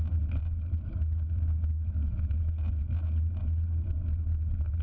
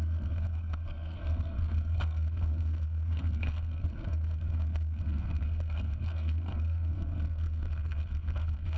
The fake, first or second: second